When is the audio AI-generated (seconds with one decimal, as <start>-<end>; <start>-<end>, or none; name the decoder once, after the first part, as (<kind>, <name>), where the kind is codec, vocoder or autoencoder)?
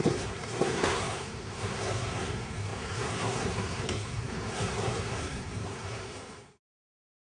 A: 0.0-7.3 (codec, SNAC)